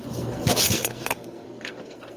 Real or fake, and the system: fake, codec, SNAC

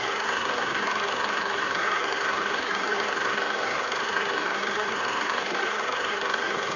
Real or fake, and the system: fake, codec, SNAC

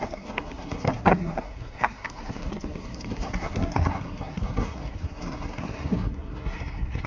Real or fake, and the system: fake, codec, SNAC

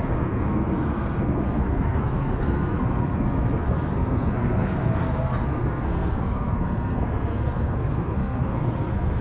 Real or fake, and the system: fake, codec, SNAC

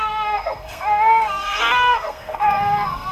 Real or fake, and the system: fake, codec, SNAC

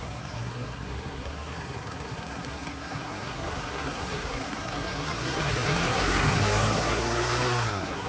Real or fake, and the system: fake, codec, SNAC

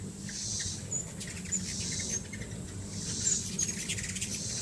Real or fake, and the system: real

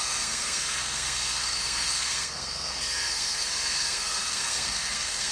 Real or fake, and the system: fake, codec, SNAC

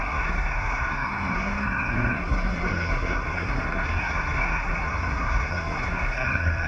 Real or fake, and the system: fake, codec, SNAC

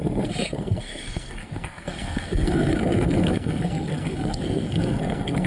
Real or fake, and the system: fake, codec, SNAC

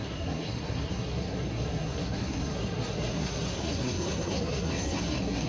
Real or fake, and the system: fake, codec, SNAC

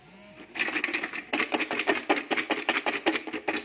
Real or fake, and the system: real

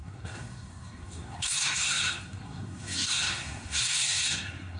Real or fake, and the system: fake, codec, SNAC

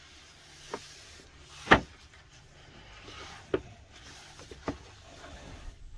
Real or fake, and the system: real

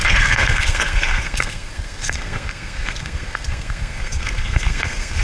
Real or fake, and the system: fake, codec, SNAC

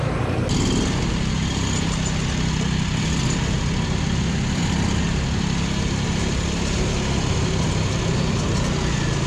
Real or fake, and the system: real